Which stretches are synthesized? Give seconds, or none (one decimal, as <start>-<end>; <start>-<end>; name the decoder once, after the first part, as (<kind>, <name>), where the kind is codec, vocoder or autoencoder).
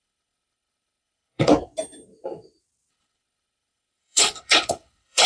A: 0.0-1.5 (codec, HILCodec); 2.9-5.3